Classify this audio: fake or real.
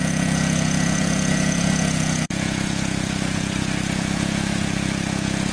fake